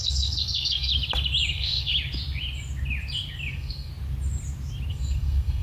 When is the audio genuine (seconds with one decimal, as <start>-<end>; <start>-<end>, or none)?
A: 0.9-1.5; 1.9-3.5; 3.9-4.9

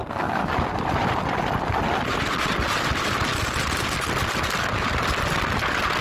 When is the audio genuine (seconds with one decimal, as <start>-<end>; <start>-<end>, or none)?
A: 0.5-6.0

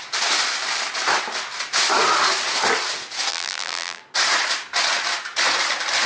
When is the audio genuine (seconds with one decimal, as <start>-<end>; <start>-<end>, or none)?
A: 0.0-3.3; 4.0-6.1

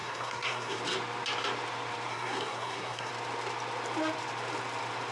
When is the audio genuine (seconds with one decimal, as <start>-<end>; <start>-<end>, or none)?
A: 0.8-2.1; 3.1-5.1

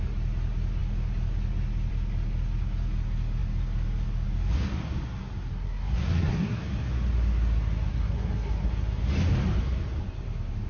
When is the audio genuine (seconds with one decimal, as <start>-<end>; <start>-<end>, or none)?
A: 0.0-5.5; 6.6-7.9; 8.7-10.7